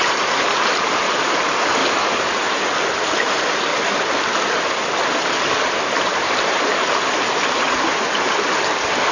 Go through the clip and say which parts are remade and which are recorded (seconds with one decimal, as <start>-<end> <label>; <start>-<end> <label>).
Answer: 0.0-3.7 remade; 3.7-6.3 recorded; 6.3-9.1 remade